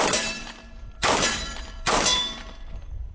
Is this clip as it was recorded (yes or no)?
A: no